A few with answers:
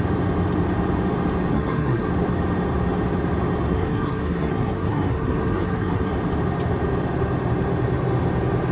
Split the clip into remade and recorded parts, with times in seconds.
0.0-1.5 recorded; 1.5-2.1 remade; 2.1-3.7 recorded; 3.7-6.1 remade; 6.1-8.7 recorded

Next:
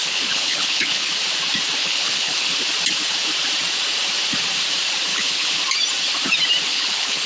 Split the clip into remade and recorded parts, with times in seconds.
0.0-1.1 remade; 1.1-1.8 recorded; 1.8-2.5 remade; 2.5-5.1 recorded; 5.1-5.6 remade; 5.6-6.7 recorded; 6.7-7.3 remade

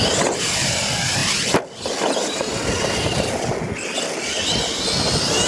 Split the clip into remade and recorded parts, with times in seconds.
0.0-5.5 recorded

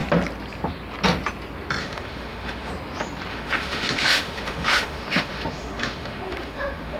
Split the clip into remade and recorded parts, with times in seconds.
0.0-1.8 recorded; 1.8-2.7 remade; 2.7-3.3 recorded; 3.3-7.0 remade

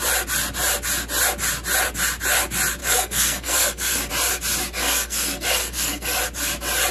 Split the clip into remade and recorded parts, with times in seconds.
0.0-2.8 recorded; 2.8-4.1 remade; 4.1-4.8 recorded; 4.8-6.2 remade; 6.2-6.9 recorded

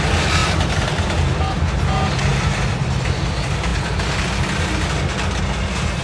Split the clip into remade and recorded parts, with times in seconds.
0.0-0.4 recorded; 0.4-1.0 remade; 1.0-2.3 recorded; 2.3-2.9 remade; 2.9-6.0 recorded

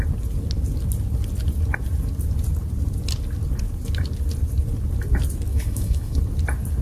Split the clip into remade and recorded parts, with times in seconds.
0.0-5.5 recorded; 5.5-6.2 remade; 6.2-6.8 recorded